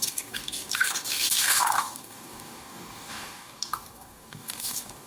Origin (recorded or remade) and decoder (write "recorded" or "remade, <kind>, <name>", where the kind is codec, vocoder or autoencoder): remade, codec, DAC